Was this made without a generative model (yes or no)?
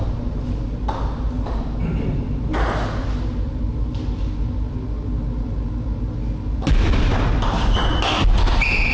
yes